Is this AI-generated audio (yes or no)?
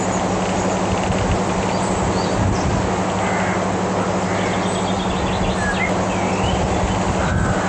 no